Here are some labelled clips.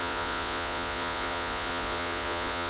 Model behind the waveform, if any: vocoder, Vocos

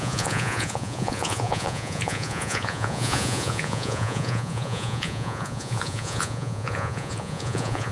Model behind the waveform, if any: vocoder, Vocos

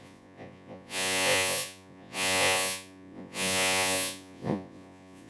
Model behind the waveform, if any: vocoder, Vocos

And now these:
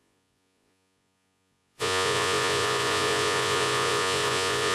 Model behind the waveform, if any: vocoder, Vocos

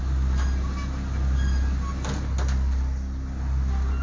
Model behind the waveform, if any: none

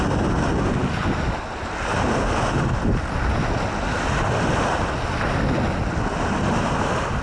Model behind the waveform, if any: none